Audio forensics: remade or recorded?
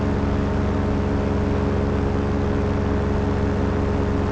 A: recorded